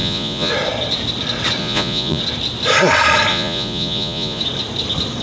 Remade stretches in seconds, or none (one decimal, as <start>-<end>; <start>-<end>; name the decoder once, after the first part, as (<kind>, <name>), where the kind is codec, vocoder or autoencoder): 0.0-0.5 (vocoder, Vocos); 1.6-2.2; 3.3-4.4